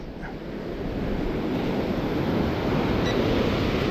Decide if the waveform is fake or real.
real